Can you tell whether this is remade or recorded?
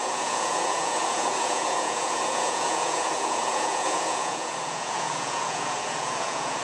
remade